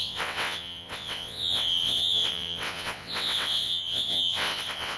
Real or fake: fake